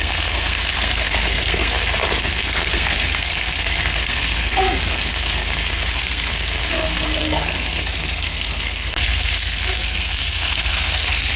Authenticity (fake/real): fake